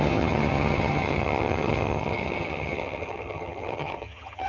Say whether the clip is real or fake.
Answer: fake